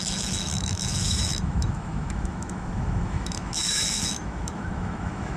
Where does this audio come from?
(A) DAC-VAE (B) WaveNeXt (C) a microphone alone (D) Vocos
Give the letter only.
A